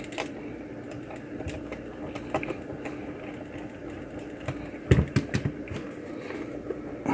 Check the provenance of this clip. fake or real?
real